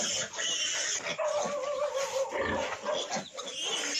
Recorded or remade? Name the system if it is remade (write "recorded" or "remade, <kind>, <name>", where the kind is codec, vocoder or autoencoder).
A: recorded